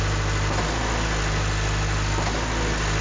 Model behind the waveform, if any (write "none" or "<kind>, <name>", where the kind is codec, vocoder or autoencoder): none